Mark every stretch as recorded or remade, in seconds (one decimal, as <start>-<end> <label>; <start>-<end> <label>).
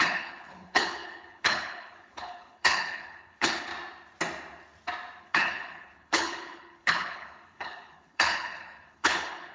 0.0-3.7 remade; 3.7-5.2 recorded; 5.2-9.5 remade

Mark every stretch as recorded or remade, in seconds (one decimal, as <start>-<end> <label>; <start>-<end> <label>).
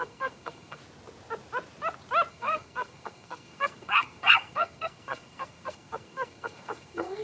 0.0-0.8 remade; 0.8-2.3 recorded; 2.3-7.2 remade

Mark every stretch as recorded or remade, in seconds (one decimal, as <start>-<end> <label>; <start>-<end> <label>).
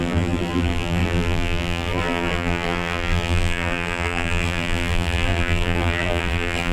0.0-6.7 remade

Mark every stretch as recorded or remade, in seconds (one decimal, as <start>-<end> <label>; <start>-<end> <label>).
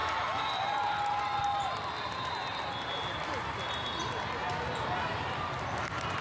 0.0-6.2 recorded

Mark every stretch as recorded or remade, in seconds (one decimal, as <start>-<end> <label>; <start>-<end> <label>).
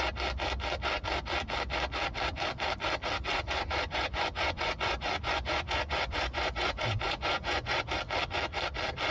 0.0-3.3 recorded; 3.3-8.0 remade; 8.0-9.1 recorded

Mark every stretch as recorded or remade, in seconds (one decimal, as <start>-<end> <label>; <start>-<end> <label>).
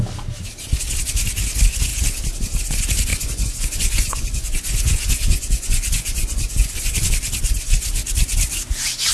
0.0-3.1 recorded; 3.1-7.1 remade; 7.1-9.1 recorded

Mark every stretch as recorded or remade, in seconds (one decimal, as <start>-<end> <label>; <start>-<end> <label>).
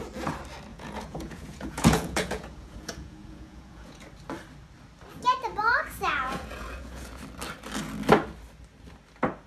0.0-0.7 recorded; 0.7-4.0 remade; 4.0-5.7 recorded; 5.7-7.2 remade; 7.2-9.5 recorded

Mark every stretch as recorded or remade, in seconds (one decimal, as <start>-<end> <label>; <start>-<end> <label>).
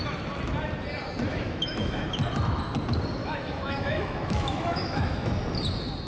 0.0-1.3 recorded; 1.3-2.2 remade; 2.2-3.2 recorded; 3.2-5.3 remade; 5.3-6.1 recorded